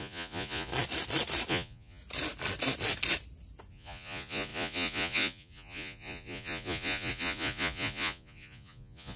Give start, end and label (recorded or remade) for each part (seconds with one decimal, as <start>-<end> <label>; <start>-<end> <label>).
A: 0.0-0.7 remade; 0.7-1.5 recorded; 1.5-2.0 remade; 2.0-3.7 recorded; 3.7-9.2 remade

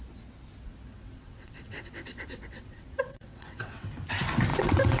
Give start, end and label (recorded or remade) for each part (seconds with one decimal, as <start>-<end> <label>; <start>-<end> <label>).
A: 0.0-0.9 recorded; 0.9-3.9 remade; 3.9-4.5 recorded; 4.5-5.0 remade

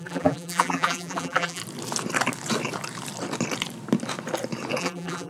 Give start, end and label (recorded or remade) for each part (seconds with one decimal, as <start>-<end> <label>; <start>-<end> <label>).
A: 0.0-1.6 remade; 1.6-4.8 recorded; 4.8-5.3 remade

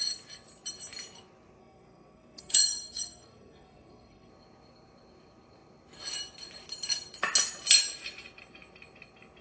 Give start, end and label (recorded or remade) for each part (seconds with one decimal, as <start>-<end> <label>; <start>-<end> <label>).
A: 0.0-1.6 recorded; 1.6-4.3 remade; 4.3-9.4 recorded

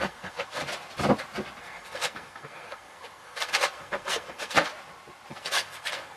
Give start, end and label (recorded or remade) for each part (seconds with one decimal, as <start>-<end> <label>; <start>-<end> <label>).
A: 0.0-0.6 remade; 0.6-1.6 recorded; 1.6-4.7 remade; 4.7-5.3 recorded; 5.3-6.2 remade

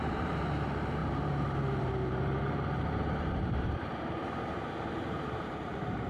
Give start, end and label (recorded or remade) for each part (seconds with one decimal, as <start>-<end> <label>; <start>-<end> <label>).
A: 0.0-6.1 remade